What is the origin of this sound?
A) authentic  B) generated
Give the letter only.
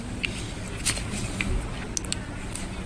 A